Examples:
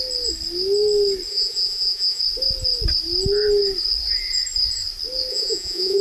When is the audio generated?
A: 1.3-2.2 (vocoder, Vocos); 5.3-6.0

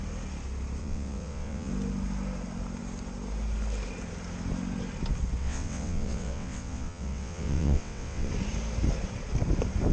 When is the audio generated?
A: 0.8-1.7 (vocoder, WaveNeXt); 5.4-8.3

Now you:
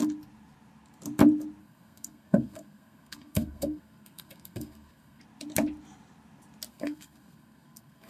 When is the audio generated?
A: 1.6-5.2 (codec, SNAC); 6.7-8.1

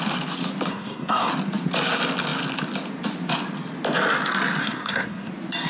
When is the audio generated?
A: 0.7-1.3 (codec, SNAC); 4.6-5.3

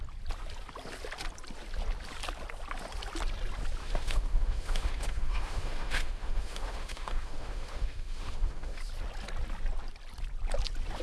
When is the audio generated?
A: 3.8-8.8 (autoencoder, DAC-VAE)